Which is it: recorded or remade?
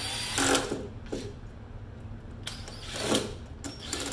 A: recorded